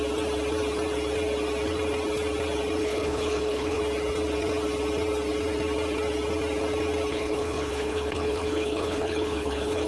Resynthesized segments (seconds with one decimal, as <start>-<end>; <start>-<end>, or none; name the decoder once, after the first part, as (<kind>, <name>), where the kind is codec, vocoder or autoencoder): 2.8-3.8 (codec, HILCodec); 7.1-9.9